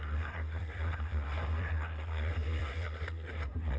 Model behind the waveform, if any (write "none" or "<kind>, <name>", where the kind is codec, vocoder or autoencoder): codec, SNAC